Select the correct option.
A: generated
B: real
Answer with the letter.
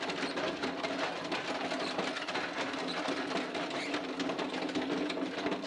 B